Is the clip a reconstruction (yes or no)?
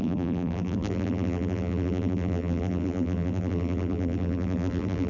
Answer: yes